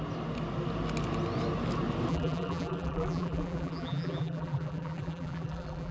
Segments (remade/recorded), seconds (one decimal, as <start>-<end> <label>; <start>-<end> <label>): 0.0-2.1 recorded; 2.1-5.9 remade